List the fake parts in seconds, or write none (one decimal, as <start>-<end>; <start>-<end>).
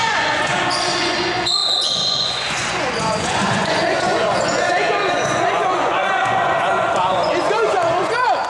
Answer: 0.0-8.5